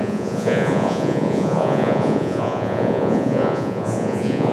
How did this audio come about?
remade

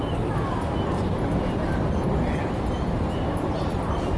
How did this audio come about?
recorded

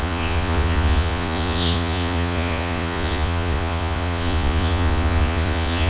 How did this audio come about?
remade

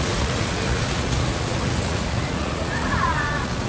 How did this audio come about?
remade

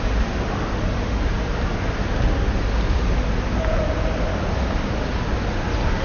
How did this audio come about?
recorded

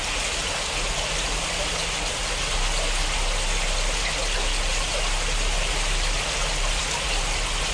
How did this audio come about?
recorded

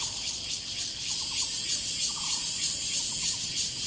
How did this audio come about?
recorded